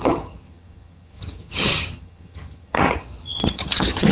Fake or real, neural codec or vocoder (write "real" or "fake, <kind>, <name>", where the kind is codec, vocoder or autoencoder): fake, vocoder, HiFi-GAN